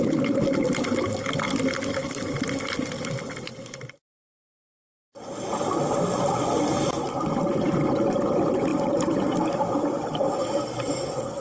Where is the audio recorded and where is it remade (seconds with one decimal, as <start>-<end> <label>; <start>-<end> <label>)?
0.0-11.4 recorded